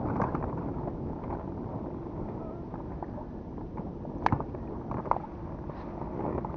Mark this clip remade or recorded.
recorded